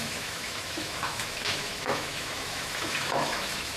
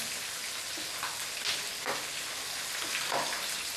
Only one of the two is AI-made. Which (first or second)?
first